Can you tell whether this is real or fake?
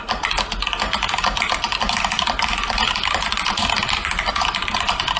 real